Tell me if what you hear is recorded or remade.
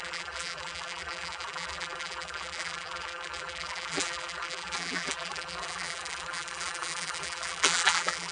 remade